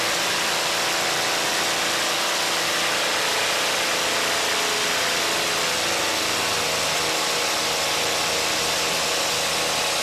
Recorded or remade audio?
recorded